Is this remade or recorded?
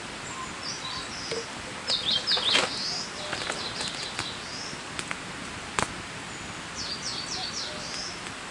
recorded